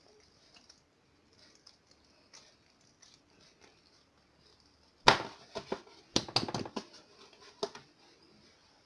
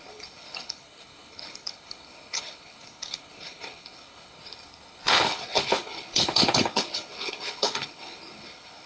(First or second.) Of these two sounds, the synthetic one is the second